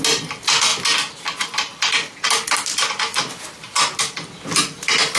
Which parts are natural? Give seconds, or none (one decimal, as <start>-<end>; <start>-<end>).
0.0-5.2